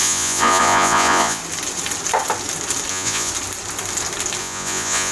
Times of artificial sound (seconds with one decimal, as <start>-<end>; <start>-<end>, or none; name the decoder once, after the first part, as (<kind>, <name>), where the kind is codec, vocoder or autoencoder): 0.0-1.4 (vocoder, Vocos); 2.9-3.3; 4.4-5.1